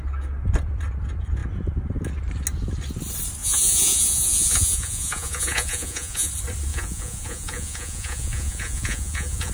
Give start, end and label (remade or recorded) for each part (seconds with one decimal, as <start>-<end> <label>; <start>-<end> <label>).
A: 0.0-3.4 recorded; 3.4-6.3 remade; 6.3-6.7 recorded; 6.7-9.5 remade